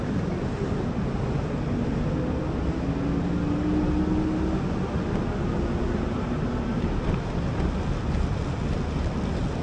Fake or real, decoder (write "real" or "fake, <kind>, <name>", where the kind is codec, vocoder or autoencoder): real